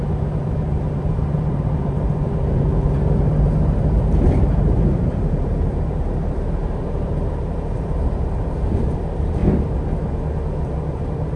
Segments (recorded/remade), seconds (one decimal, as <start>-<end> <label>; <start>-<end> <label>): 0.0-9.4 remade; 9.4-10.6 recorded; 10.6-11.4 remade